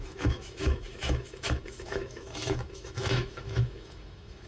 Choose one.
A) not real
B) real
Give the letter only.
A